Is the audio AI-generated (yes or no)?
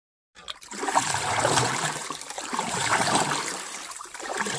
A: yes